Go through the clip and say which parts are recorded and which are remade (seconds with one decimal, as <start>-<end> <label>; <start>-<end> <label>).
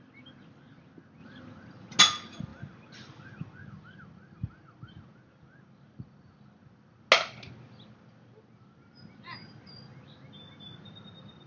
0.0-11.5 recorded